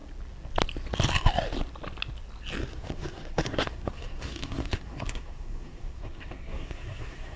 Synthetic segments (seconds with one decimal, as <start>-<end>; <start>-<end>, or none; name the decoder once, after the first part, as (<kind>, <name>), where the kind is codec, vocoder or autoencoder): 2.7-7.4 (codec, SNAC)